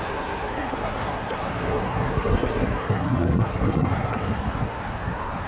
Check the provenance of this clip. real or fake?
fake